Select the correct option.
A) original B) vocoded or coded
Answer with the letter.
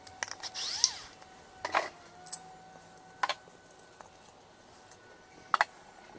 A